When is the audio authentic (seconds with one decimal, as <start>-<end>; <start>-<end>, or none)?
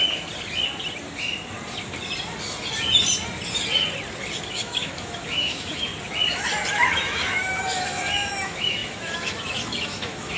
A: 0.0-4.5; 5.9-6.7